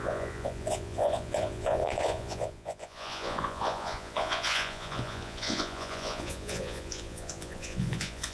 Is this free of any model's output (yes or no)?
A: no